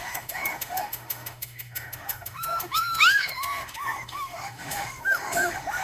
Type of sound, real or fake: fake